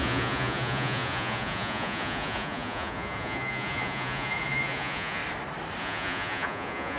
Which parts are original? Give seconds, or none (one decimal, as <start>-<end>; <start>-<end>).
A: 5.2-5.8